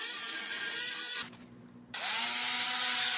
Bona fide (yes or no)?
yes